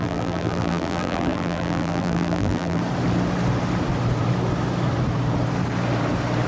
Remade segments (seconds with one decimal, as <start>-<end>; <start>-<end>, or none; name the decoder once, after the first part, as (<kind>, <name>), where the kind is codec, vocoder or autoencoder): 0.0-2.8 (vocoder, BigVGAN v2)